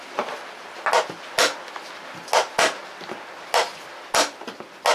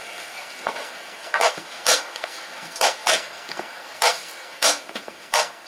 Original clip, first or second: first